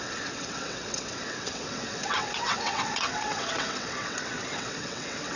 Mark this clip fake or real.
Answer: fake